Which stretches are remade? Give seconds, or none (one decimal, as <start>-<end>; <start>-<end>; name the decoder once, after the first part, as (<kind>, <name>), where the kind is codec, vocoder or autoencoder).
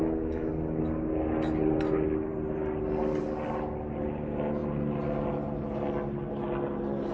0.0-0.5 (autoencoder, DAC-VAE)